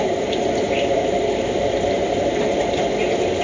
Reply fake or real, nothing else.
real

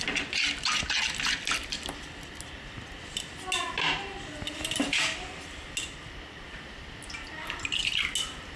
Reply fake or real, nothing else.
real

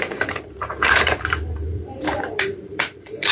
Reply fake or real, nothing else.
fake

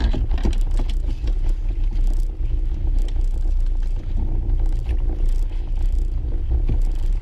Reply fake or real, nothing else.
real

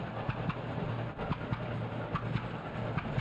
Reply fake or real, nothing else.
real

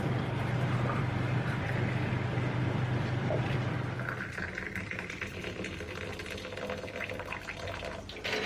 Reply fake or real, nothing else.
fake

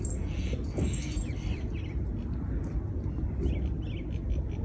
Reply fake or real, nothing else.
real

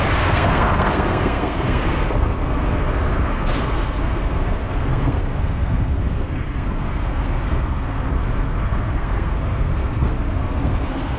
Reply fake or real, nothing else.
fake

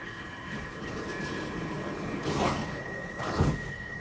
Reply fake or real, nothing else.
fake